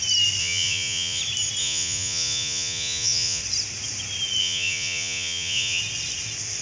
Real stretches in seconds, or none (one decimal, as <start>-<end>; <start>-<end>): 0.0-0.4; 1.2-1.6; 3.4-4.4; 5.8-6.6